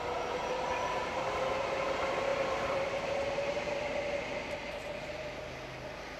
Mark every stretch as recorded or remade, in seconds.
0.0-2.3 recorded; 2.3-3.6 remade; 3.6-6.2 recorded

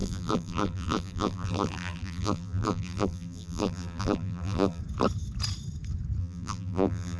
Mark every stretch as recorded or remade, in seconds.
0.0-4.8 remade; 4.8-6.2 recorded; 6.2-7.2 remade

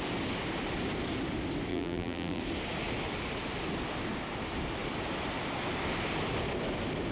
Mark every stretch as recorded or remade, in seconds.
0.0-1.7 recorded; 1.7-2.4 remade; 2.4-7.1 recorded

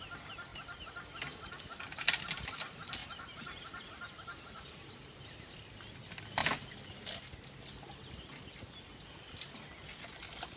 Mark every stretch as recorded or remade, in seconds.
0.0-3.0 recorded; 3.0-5.0 remade; 5.0-10.6 recorded